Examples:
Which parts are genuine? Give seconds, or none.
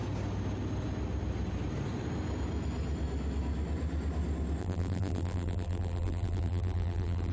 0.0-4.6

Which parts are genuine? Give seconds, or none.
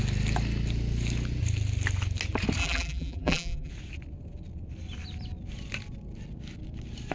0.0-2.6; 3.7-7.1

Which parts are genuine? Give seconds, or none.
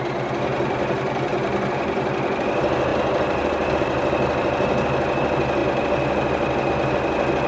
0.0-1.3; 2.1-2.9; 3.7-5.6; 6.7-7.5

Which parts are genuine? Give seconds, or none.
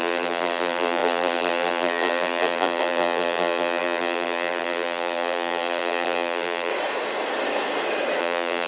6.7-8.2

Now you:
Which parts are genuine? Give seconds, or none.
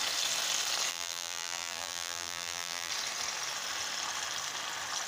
0.0-0.9; 2.9-5.1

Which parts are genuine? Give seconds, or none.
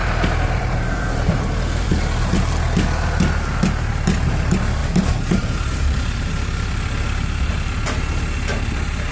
1.9-4.8; 6.3-9.1